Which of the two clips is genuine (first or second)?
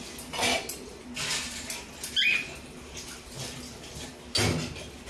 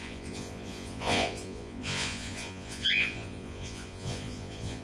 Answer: first